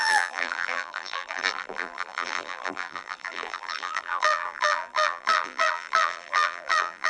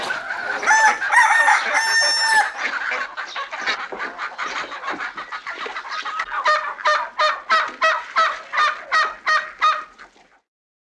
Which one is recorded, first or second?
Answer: second